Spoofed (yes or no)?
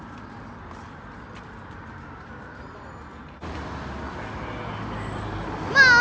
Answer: no